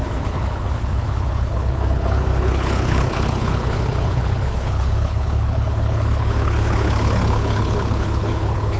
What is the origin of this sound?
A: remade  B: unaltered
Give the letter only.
A